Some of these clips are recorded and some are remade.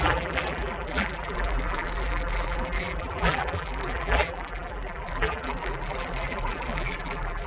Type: remade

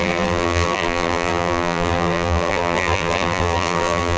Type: remade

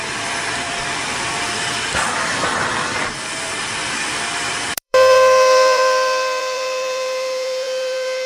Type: remade